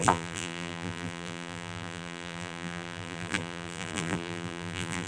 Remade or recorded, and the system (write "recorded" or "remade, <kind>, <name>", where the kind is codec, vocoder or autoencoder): remade, vocoder, BigVGAN v2